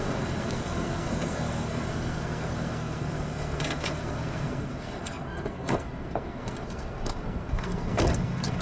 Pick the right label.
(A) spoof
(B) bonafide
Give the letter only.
A